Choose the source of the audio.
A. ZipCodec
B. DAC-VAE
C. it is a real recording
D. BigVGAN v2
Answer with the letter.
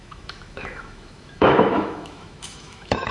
B